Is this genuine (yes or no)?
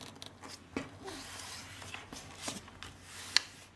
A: yes